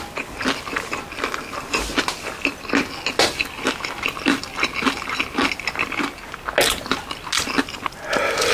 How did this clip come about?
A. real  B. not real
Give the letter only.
A